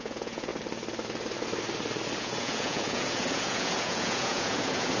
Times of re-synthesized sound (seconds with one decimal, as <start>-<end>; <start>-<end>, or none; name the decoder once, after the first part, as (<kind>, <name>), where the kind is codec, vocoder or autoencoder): 0.0-0.5 (vocoder, Vocos); 2.2-5.0